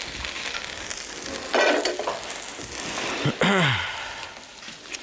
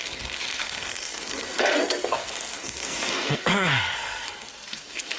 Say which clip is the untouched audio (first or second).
first